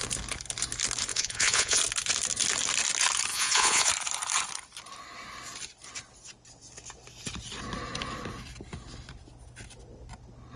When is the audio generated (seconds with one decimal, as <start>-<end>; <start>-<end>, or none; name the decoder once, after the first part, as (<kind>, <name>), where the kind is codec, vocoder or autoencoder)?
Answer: 1.1-1.8 (vocoder, Vocos); 3.3-3.9